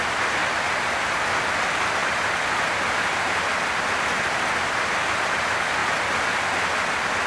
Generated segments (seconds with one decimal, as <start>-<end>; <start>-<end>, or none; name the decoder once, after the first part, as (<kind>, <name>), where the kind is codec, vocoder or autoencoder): 5.8-6.4 (vocoder, BigVGAN v2)